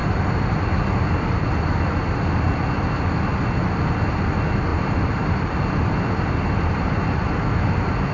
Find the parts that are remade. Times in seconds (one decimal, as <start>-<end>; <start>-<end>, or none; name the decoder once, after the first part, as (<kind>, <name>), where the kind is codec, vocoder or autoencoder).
0.0-0.6 (vocoder, BigVGAN v2); 4.7-7.0